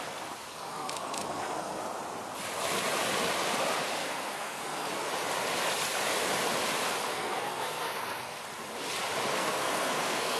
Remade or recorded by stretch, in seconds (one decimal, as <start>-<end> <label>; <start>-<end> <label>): 0.0-0.5 recorded; 0.5-1.8 remade; 1.8-4.0 recorded; 4.0-5.1 remade; 5.1-7.1 recorded; 7.1-8.4 remade; 8.4-9.3 recorded; 9.3-10.4 remade